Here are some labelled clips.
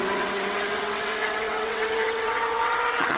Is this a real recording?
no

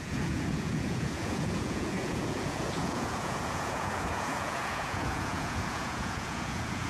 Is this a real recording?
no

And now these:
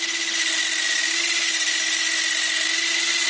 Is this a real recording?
yes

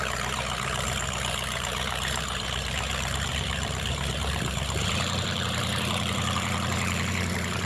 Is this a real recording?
no